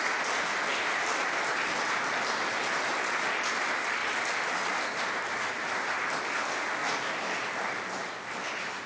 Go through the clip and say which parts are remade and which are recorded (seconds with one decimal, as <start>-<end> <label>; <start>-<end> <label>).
0.0-8.9 recorded